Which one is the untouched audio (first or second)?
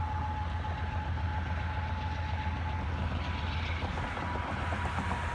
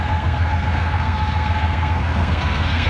first